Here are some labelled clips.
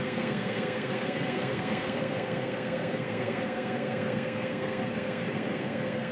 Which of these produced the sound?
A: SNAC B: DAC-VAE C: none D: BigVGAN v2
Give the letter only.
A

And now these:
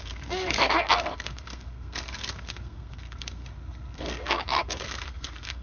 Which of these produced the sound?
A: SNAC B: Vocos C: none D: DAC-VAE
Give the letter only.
A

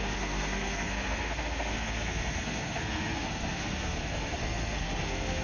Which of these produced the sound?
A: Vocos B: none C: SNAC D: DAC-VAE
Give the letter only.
C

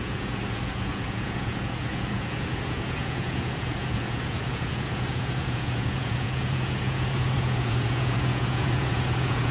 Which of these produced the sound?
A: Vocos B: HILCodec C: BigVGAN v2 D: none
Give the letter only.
A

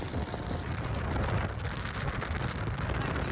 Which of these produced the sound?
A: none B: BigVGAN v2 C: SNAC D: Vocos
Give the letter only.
A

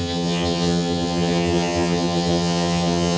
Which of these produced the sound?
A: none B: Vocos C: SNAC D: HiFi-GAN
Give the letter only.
D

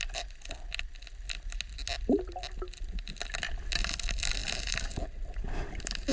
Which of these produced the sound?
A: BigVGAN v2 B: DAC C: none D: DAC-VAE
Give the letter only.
C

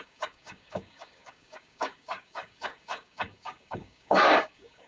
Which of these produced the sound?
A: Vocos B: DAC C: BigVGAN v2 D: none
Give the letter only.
B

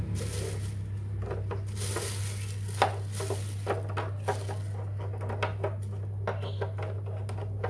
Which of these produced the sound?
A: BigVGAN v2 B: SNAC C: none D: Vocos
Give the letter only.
C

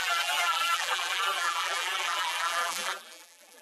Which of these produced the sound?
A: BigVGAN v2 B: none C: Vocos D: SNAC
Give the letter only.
A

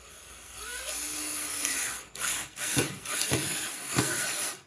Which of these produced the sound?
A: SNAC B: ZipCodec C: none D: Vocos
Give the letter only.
A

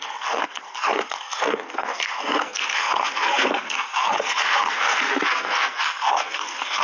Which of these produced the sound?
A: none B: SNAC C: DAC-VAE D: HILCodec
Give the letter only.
B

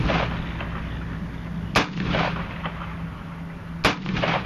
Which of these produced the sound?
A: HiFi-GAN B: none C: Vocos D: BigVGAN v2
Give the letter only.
B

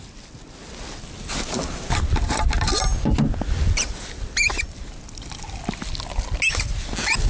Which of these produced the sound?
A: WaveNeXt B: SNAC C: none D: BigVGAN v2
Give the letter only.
C